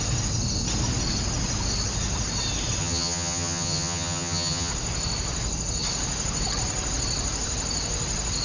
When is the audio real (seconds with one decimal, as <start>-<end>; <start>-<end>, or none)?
0.0-2.8; 4.7-8.4